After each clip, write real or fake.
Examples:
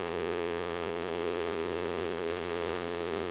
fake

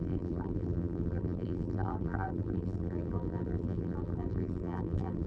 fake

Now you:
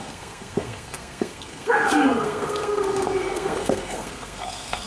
fake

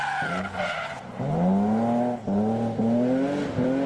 real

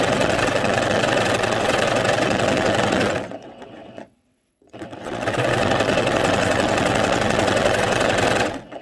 fake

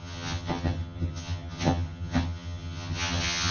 fake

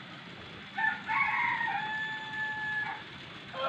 real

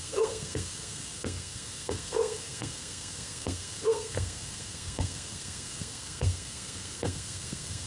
fake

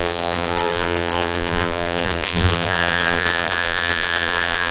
fake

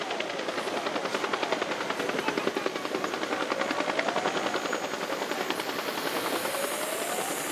real